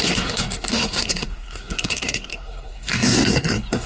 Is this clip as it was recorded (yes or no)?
no